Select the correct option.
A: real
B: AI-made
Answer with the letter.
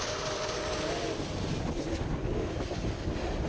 A